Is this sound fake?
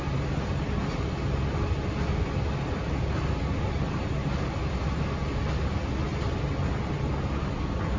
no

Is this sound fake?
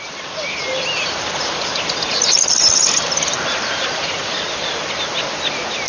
no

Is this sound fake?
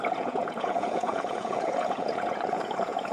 yes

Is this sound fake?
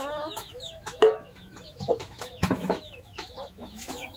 yes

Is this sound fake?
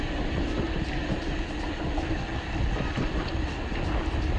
no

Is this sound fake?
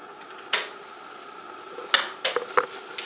no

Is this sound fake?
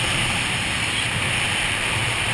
yes